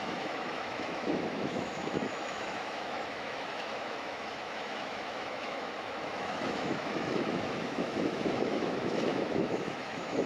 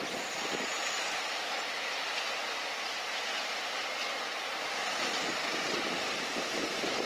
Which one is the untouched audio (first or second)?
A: second